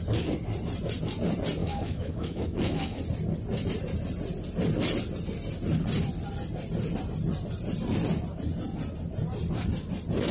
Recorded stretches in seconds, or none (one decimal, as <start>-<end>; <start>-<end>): 0.0-1.6; 3.0-10.3